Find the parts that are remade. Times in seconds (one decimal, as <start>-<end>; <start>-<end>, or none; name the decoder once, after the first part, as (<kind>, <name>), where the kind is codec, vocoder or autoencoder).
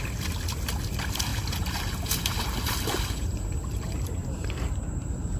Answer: 1.3-4.5 (vocoder, BigVGAN v2)